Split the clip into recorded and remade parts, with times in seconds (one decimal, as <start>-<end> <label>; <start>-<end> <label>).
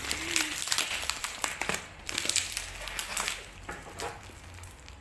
0.0-1.2 recorded; 1.2-1.8 remade; 1.8-5.0 recorded